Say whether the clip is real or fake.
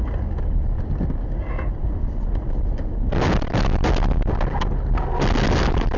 real